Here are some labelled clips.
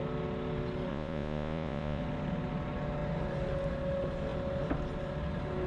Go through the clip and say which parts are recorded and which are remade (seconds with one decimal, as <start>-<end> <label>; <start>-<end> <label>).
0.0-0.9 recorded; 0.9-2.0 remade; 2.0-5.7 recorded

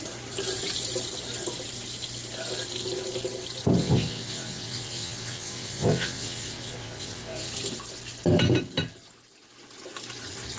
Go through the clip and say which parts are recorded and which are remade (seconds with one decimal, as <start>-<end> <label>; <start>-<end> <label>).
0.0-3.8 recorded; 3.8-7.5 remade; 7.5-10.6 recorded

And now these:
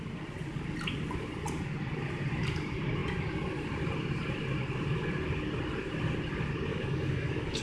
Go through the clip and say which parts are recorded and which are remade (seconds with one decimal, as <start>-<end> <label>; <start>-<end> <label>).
0.0-6.7 recorded; 6.7-7.6 remade